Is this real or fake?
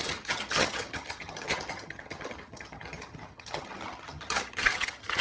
fake